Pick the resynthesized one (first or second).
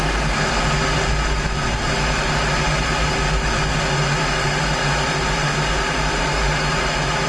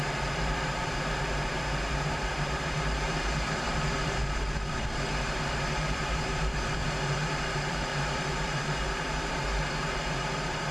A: second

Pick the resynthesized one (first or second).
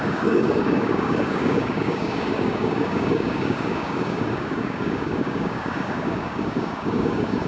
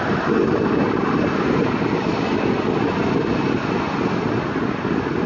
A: first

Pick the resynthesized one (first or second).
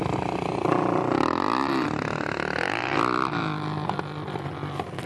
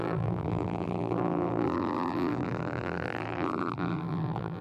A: second